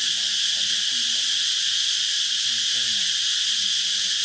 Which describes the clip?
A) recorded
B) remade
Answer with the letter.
A